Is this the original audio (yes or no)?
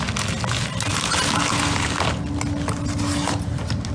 yes